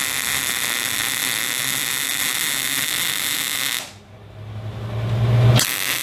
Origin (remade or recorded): recorded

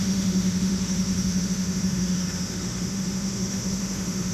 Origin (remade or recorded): remade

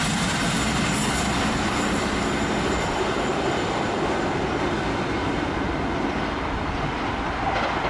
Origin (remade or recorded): recorded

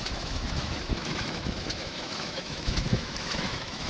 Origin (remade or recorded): remade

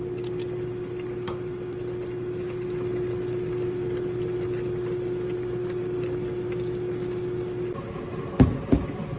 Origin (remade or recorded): recorded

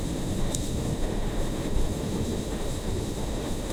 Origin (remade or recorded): remade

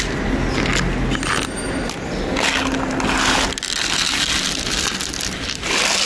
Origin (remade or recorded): recorded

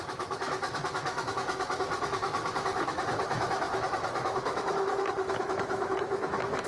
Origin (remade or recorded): remade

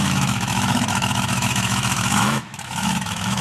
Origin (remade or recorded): remade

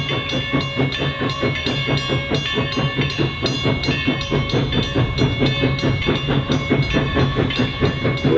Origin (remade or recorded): recorded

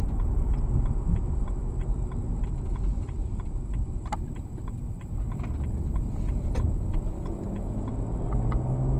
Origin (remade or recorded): recorded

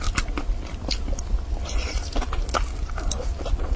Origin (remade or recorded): recorded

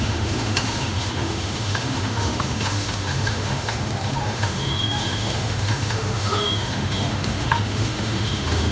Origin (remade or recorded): remade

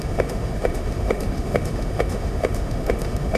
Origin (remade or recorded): remade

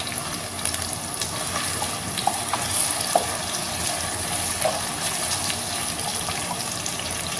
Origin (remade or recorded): recorded